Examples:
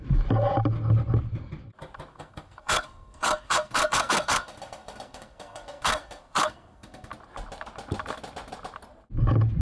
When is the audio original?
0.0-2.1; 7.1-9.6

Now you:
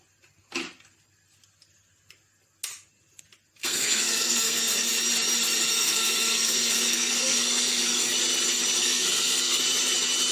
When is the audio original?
0.0-3.6; 4.9-5.7; 8.1-8.8; 9.6-10.3

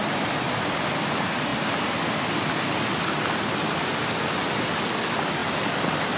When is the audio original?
0.0-6.2

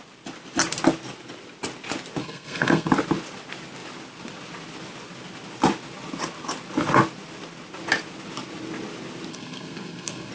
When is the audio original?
0.0-2.2; 2.9-9.3

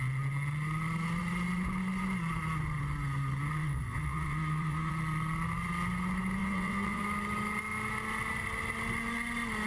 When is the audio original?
0.0-3.6; 4.9-6.4; 7.0-9.7